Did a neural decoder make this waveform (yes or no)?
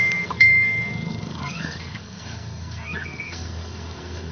yes